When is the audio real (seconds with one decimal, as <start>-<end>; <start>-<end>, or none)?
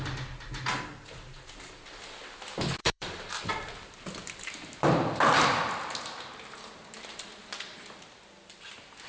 0.0-2.8; 3.3-9.1